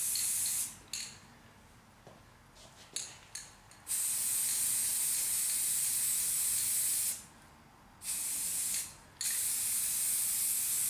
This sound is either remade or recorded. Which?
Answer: recorded